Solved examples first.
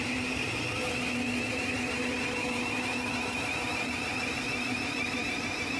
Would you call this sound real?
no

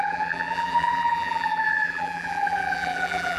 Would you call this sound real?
no